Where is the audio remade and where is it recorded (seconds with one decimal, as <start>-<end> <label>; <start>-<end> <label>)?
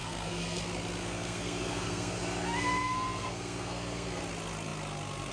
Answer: 0.0-0.6 remade; 0.6-1.0 recorded; 1.0-4.2 remade; 4.2-5.3 recorded